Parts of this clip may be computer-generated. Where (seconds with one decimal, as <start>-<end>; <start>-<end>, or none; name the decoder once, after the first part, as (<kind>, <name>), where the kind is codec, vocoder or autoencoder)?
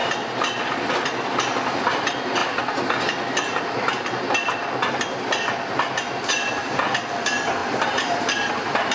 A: 0.0-0.9 (vocoder, BigVGAN v2); 7.6-8.5